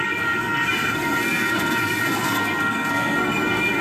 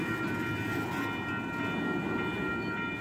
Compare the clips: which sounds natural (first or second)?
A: second